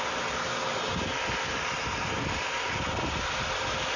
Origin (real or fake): real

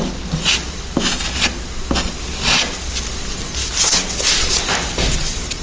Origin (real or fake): real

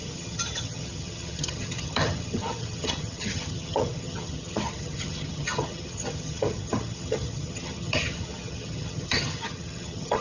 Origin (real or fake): fake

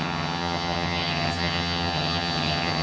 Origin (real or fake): fake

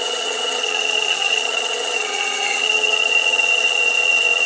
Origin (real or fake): fake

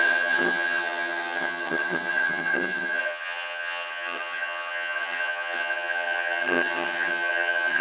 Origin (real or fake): fake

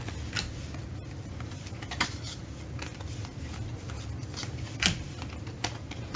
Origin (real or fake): real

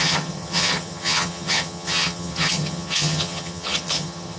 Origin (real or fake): fake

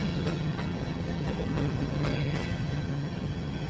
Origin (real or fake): fake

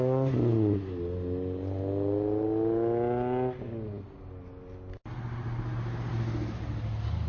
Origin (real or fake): real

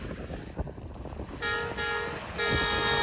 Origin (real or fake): real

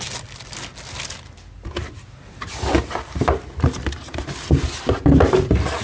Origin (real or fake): real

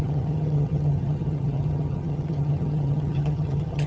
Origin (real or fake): fake